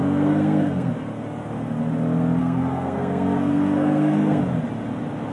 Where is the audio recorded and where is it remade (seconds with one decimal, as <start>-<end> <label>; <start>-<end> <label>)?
0.0-0.9 remade; 0.9-2.4 recorded; 2.4-4.4 remade; 4.4-5.3 recorded